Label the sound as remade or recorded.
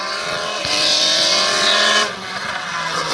remade